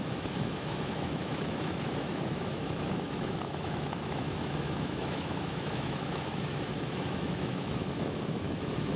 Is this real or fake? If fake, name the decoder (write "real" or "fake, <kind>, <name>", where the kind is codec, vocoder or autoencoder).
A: fake, autoencoder, DAC-VAE